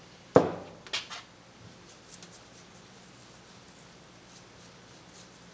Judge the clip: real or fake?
real